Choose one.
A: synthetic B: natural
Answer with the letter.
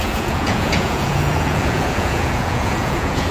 A